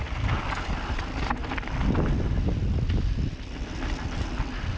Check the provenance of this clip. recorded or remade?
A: recorded